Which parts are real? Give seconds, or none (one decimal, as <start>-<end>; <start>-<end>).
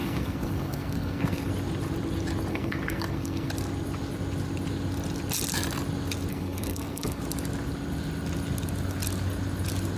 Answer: 1.5-2.5; 3.5-6.3; 7.2-10.0